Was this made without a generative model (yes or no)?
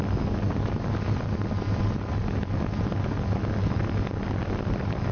yes